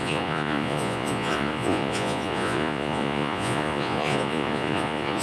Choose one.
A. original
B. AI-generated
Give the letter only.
B